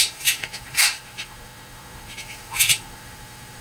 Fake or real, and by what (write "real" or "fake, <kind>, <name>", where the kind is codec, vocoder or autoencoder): fake, autoencoder, DAC-VAE